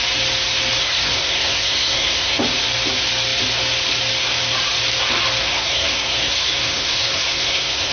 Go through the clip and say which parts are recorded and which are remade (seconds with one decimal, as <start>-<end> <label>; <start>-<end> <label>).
0.0-0.8 recorded; 0.8-2.4 remade; 2.4-5.4 recorded; 5.4-7.9 remade